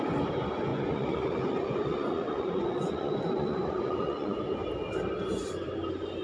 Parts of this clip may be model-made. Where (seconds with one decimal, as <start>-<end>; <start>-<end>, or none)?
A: 0.7-4.4